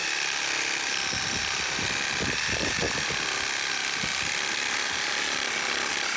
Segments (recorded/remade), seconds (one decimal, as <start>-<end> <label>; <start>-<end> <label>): 0.0-6.2 recorded